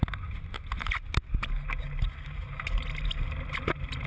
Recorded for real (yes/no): yes